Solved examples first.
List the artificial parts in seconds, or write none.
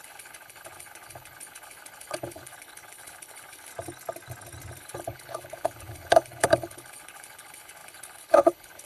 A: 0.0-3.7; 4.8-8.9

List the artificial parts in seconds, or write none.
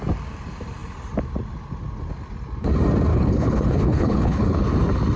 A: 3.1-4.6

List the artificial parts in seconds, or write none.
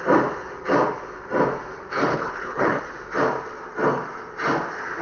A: 2.1-2.8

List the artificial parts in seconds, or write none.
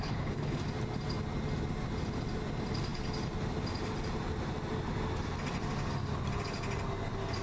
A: 0.0-0.6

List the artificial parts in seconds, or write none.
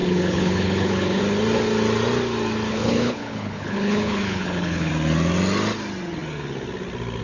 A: 0.0-1.2; 2.7-4.9